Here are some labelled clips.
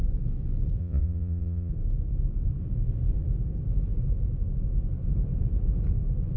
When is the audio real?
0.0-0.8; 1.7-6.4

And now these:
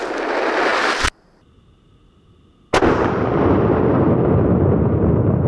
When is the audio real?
0.0-5.5

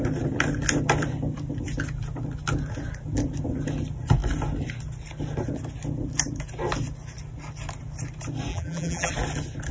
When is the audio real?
0.0-8.5; 9.1-9.7

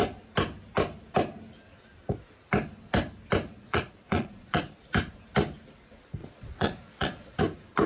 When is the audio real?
0.0-3.5; 4.6-6.2; 7.4-7.9